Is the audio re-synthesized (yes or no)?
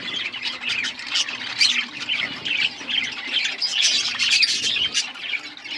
no